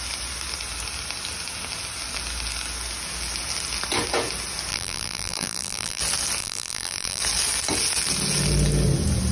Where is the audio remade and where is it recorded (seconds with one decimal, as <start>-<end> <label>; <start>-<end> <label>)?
0.0-4.7 recorded; 4.7-6.0 remade; 6.0-6.4 recorded; 6.4-7.2 remade; 7.2-9.3 recorded